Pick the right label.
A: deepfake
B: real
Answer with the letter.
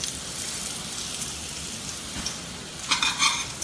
A